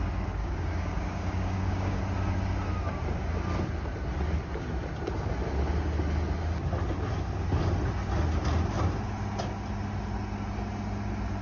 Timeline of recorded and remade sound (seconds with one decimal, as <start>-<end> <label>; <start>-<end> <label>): 0.0-0.4 recorded; 0.4-2.0 remade; 2.0-11.4 recorded